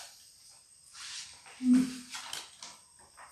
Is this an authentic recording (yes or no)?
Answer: no